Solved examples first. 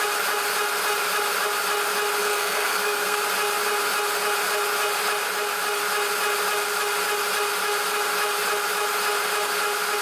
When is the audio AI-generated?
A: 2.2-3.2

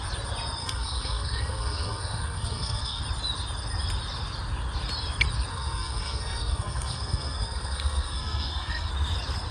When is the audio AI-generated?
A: 0.6-3.0; 5.5-8.9

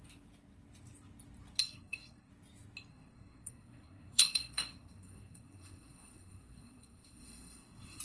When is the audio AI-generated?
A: 1.6-2.3; 2.9-8.0

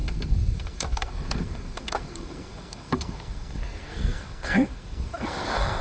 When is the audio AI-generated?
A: 0.0-5.8